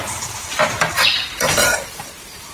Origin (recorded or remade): remade